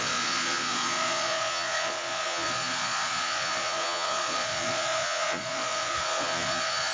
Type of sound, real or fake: fake